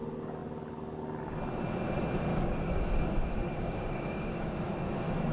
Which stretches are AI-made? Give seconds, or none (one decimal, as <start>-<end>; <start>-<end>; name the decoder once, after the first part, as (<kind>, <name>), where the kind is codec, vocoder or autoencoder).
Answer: 2.3-4.7 (codec, DAC)